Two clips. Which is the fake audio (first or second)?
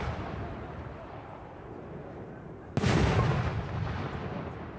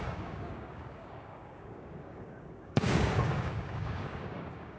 second